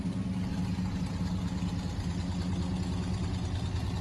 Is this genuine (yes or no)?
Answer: yes